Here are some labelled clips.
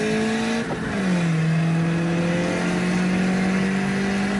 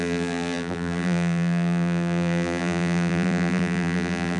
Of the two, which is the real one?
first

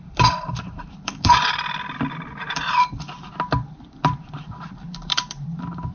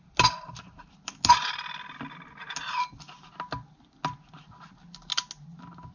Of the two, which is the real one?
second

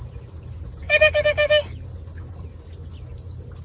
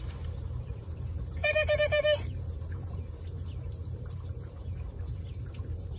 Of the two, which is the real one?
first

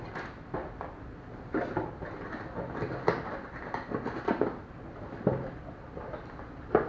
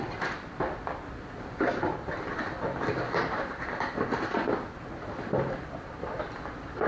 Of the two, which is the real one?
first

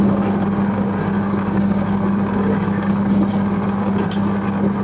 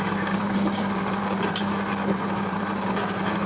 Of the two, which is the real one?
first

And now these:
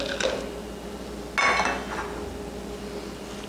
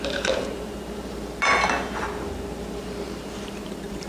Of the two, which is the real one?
first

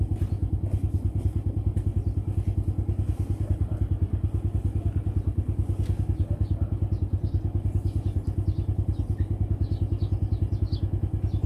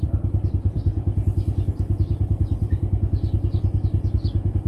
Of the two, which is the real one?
first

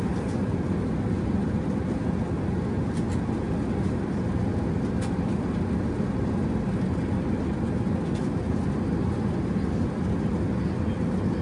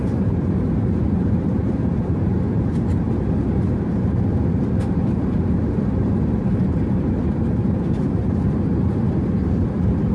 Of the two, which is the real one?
first